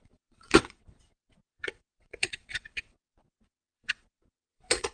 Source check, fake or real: fake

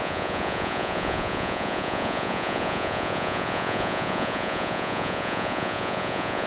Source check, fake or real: fake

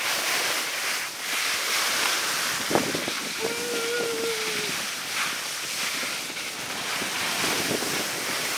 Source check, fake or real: real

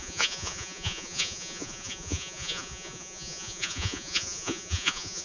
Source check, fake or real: fake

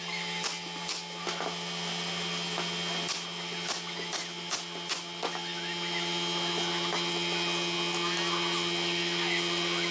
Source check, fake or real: real